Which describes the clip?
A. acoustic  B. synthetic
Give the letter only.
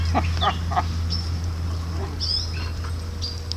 A